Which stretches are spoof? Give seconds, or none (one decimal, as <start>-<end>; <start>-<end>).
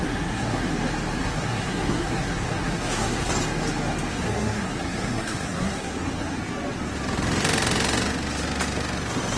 0.0-0.7; 1.2-3.3; 4.1-6.4